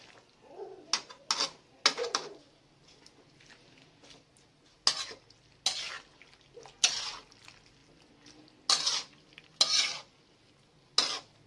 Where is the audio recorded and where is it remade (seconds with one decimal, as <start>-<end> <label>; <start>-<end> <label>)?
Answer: 0.0-11.5 recorded

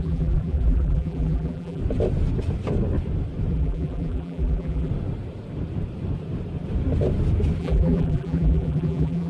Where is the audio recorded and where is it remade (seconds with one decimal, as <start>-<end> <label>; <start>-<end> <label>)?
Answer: 0.0-1.8 remade; 1.8-3.5 recorded; 3.5-4.9 remade; 4.9-7.6 recorded; 7.6-9.3 remade